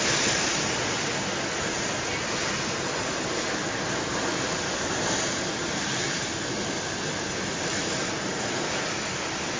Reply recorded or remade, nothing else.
recorded